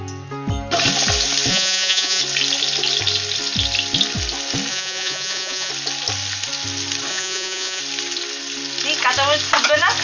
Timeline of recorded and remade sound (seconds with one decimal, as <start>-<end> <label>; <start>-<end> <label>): 0.0-1.5 recorded; 1.5-2.2 remade; 2.2-4.7 recorded; 4.7-5.7 remade; 5.7-7.1 recorded; 7.1-7.8 remade; 7.8-10.0 recorded